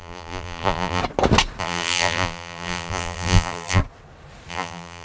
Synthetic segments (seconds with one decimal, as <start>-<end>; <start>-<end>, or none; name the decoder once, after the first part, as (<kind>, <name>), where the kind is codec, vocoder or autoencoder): 0.0-1.0 (vocoder, BigVGAN v2); 1.6-3.8; 4.5-5.0